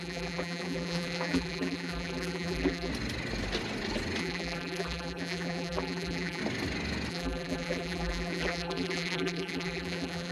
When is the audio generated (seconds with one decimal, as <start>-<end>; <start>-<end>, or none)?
0.0-2.9; 4.2-6.4; 7.1-10.3